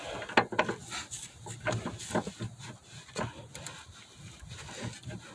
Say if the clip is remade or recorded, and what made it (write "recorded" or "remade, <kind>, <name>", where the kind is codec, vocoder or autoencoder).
recorded